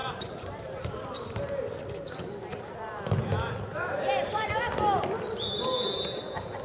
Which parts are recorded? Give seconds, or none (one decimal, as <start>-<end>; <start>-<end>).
1.6-3.7; 4.5-6.6